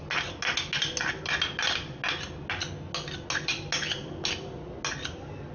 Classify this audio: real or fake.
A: real